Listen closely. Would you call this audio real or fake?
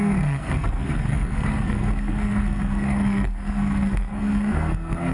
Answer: fake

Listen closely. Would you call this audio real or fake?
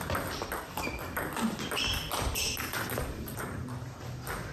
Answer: real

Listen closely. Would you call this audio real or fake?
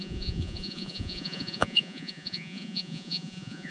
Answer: fake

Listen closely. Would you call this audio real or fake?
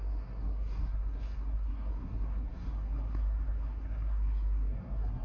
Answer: fake